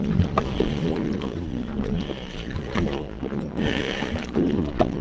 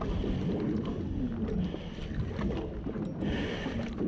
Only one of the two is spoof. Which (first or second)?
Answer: first